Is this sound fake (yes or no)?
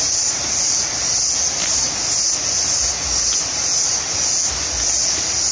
no